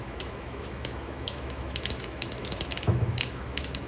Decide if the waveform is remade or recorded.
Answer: remade